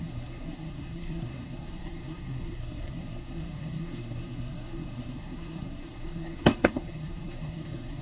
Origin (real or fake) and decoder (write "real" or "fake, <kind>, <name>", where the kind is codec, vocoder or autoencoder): fake, codec, SNAC